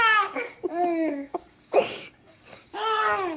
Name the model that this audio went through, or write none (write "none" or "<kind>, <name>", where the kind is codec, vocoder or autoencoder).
codec, DAC